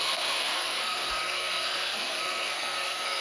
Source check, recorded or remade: remade